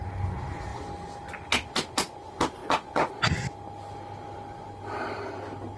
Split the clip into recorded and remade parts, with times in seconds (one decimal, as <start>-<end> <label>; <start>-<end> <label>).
0.0-5.8 recorded